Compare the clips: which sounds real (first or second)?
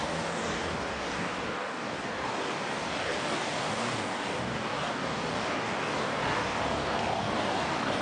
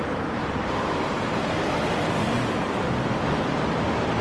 second